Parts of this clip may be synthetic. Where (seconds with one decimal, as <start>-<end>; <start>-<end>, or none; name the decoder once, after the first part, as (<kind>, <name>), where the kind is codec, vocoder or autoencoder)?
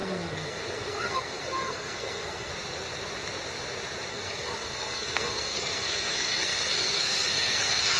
0.0-2.5 (codec, SNAC); 4.1-8.0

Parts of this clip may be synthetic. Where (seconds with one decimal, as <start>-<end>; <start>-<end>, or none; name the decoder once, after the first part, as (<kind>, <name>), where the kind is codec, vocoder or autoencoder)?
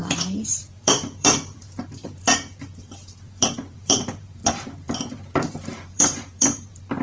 0.0-7.0 (vocoder, BigVGAN v2)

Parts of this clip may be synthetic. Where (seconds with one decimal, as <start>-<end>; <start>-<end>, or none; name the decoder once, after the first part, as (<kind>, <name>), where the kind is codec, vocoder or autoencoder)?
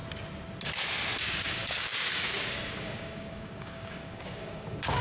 1.2-5.0 (codec, DAC)